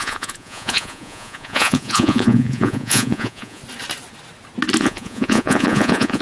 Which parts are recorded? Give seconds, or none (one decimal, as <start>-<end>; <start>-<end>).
3.6-4.8